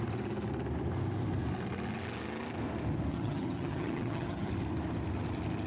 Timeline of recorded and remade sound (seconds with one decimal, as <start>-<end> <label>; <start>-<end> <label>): 0.0-3.1 recorded; 3.1-4.5 remade; 4.5-5.7 recorded